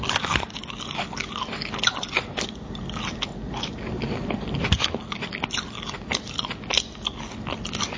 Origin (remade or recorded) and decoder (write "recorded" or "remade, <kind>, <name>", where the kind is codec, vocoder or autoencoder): recorded